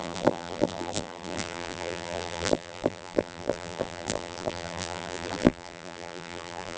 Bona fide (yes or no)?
no